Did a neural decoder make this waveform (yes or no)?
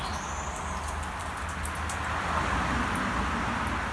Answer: no